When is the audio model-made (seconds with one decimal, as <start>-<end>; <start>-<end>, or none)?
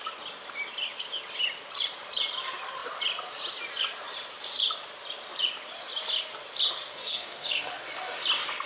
6.9-7.7